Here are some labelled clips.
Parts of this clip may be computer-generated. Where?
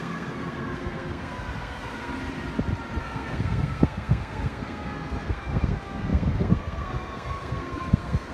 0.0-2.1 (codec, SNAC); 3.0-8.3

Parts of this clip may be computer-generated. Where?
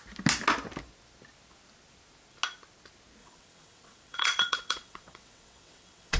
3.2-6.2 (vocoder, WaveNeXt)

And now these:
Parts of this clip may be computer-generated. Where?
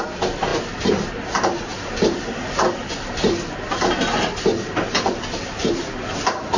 none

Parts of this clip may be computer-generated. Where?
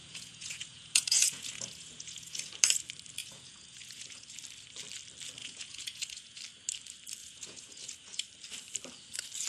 0.0-2.5 (vocoder, Vocos); 3.2-4.3; 5.4-6.4; 7.2-8.2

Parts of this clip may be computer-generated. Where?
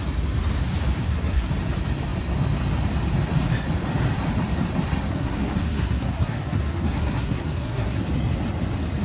1.0-1.5 (codec, SNAC); 5.1-8.1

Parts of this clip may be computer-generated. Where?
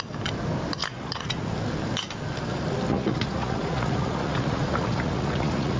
0.8-1.4 (vocoder, Vocos); 2.9-5.8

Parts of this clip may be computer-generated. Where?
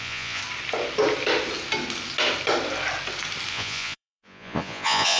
0.0-0.4 (vocoder, Vocos); 3.5-5.2